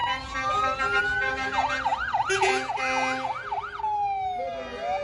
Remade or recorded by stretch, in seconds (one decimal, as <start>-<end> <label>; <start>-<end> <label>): 0.0-5.0 recorded